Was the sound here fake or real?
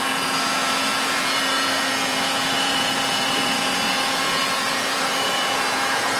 fake